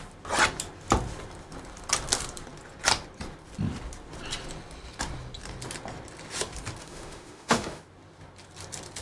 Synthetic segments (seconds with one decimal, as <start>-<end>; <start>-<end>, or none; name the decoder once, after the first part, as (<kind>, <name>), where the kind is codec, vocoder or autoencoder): 6.8-7.8 (autoencoder, DAC-VAE)